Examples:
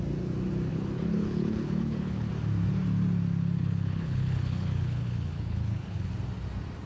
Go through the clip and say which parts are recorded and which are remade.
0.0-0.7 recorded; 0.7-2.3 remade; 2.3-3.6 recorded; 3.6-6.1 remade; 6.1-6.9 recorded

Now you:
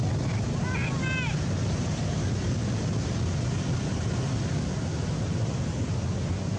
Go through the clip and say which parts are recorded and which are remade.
0.0-6.6 recorded

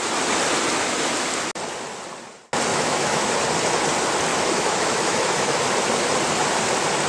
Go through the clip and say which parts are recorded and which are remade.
0.0-2.7 recorded; 2.7-3.3 remade; 3.3-4.3 recorded; 4.3-5.6 remade; 5.6-7.1 recorded

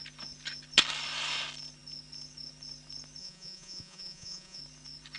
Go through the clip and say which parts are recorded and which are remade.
0.0-3.2 recorded; 3.2-4.6 remade; 4.6-5.2 recorded

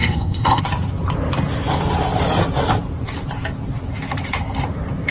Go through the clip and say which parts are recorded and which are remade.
0.0-0.6 remade; 0.6-5.1 recorded

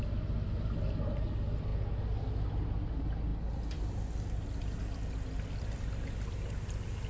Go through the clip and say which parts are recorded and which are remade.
0.0-7.1 recorded